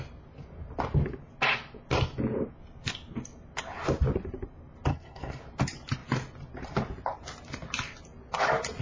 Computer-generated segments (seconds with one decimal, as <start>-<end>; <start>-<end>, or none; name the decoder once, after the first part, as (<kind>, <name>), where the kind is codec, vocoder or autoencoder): 4.9-5.4 (codec, SNAC)